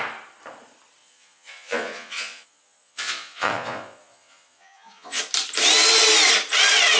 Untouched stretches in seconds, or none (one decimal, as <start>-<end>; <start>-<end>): 0.0-1.0; 5.2-7.0